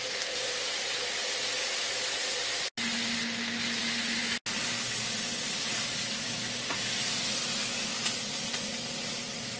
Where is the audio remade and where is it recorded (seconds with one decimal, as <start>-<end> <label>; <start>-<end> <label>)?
0.0-9.6 recorded